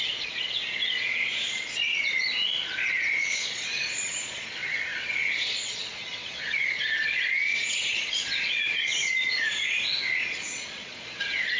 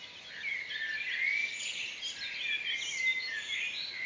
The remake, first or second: first